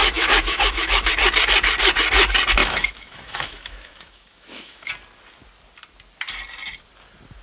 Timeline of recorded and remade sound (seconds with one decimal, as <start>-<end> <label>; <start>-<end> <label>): 0.0-1.1 remade; 1.1-2.6 recorded; 2.6-4.9 remade; 4.9-7.4 recorded

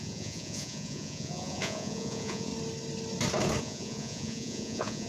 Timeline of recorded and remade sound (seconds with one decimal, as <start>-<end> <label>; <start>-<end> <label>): 0.0-2.5 remade; 2.5-3.6 recorded; 3.6-5.1 remade

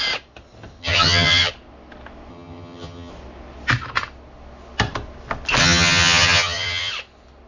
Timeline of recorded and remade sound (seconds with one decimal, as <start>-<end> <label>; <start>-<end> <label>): 0.0-0.8 recorded; 0.8-1.5 remade; 1.5-2.3 recorded; 2.3-3.1 remade; 3.1-5.6 recorded; 5.6-6.9 remade; 6.9-7.5 recorded

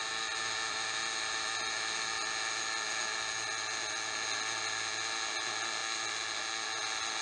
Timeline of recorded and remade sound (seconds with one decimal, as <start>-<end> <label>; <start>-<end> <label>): 0.0-7.2 recorded

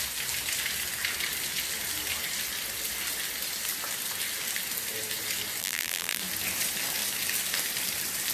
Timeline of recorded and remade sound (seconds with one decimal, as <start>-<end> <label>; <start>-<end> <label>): 0.0-5.6 recorded; 5.6-6.2 remade; 6.2-8.3 recorded

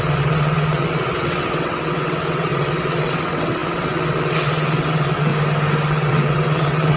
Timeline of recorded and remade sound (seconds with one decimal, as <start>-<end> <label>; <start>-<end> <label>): 0.0-5.3 remade; 5.3-5.9 recorded; 5.9-7.0 remade

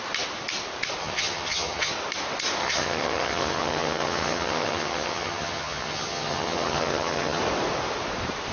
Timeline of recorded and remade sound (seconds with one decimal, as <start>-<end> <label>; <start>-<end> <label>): 0.0-1.0 recorded; 1.0-1.9 remade; 1.9-2.6 recorded; 2.6-7.4 remade; 7.4-8.5 recorded

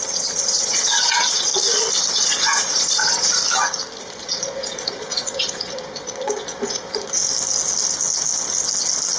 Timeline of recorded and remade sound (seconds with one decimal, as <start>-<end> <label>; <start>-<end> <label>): 0.0-1.5 remade; 1.5-2.1 recorded; 2.1-3.4 remade; 3.4-4.0 recorded; 4.0-7.2 remade; 7.2-9.2 recorded